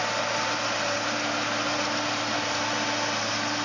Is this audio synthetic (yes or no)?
no